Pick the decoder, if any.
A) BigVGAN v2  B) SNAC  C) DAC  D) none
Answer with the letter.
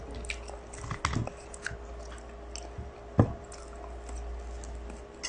D